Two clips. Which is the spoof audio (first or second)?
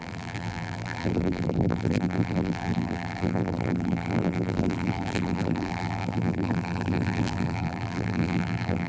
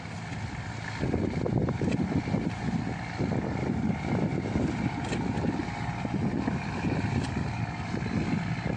first